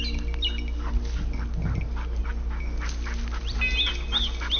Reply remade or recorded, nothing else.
recorded